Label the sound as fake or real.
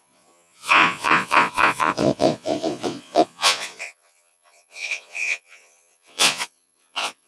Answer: fake